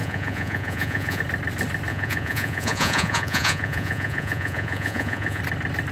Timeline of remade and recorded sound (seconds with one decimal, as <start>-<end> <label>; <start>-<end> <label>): 0.0-1.2 remade; 1.2-1.9 recorded; 1.9-5.4 remade; 5.4-5.9 recorded